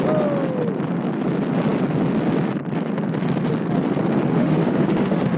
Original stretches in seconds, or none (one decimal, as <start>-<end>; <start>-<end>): 0.0-4.3